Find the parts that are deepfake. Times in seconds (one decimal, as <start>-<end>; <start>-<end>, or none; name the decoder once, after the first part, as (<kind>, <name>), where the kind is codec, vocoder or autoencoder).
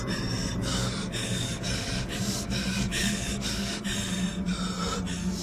0.6-3.8 (codec, DAC)